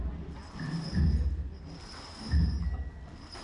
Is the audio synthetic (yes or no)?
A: no